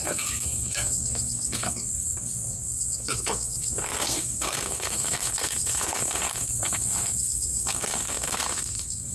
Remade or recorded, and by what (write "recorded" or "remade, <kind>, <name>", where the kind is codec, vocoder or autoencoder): remade, codec, SNAC